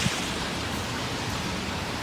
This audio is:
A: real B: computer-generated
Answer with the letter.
B